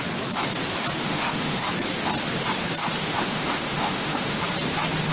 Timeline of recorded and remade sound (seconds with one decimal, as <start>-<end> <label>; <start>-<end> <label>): 0.0-1.0 recorded; 1.0-1.7 remade; 1.7-3.0 recorded; 3.0-4.4 remade; 4.4-5.1 recorded